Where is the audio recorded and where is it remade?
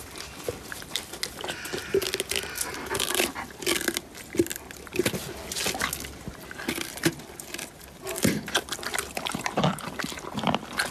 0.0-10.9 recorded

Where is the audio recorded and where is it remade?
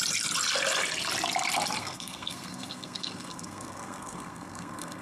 0.0-1.8 recorded; 1.8-5.0 remade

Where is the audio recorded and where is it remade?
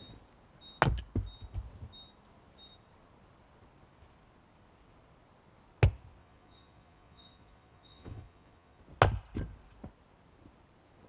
0.0-6.2 recorded; 6.2-8.8 remade; 8.8-11.1 recorded